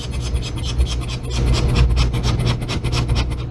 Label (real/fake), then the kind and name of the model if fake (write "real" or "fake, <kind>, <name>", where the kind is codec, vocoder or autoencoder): real